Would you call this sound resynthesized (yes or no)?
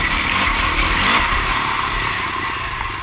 no